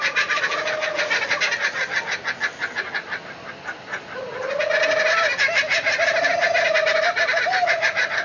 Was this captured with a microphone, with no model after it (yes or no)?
yes